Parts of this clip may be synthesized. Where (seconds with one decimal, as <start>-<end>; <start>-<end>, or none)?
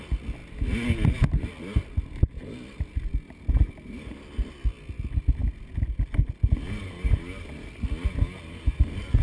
none